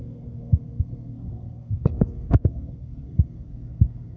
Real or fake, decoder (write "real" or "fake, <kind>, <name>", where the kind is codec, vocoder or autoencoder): fake, codec, SNAC